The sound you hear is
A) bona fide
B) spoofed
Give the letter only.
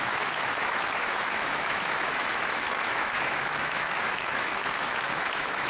B